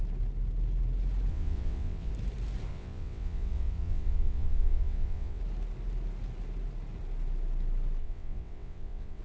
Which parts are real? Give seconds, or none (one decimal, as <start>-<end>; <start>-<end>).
0.0-1.3; 2.1-2.7; 5.4-8.0